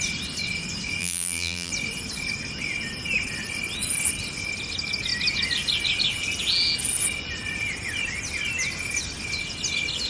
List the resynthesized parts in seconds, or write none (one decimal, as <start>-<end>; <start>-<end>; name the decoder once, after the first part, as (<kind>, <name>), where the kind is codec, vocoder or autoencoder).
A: 1.0-1.7 (vocoder, BigVGAN v2)